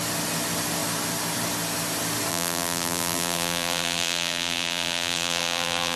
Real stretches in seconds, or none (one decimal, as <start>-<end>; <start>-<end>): 0.0-2.3